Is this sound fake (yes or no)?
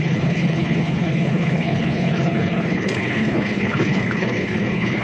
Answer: yes